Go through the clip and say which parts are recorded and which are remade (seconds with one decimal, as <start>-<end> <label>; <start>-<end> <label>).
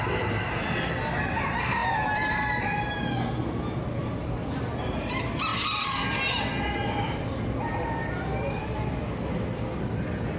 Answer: 0.0-1.8 recorded; 1.8-2.6 remade; 2.6-4.0 recorded; 4.0-4.6 remade; 4.6-10.4 recorded